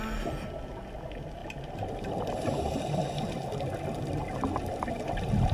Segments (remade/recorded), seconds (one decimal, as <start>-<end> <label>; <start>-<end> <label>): 0.0-5.5 recorded